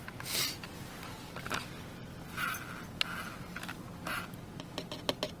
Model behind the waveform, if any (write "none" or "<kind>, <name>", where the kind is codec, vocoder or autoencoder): none